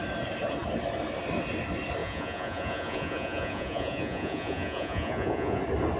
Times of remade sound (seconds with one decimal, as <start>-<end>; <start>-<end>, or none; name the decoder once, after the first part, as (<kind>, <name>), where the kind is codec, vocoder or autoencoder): 2.0-5.6 (vocoder, Vocos)